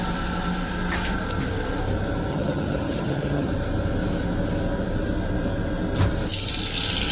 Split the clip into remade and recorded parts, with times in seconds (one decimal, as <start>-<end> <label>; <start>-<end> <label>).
0.0-2.3 recorded; 2.3-3.5 remade; 3.5-7.1 recorded